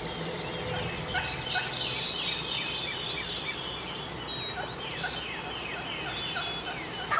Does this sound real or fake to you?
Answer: real